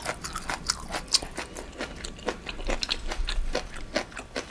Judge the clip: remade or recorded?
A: recorded